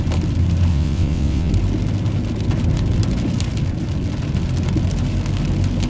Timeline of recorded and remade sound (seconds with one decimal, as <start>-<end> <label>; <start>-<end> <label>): 0.0-0.7 recorded; 0.7-1.5 remade; 1.5-5.9 recorded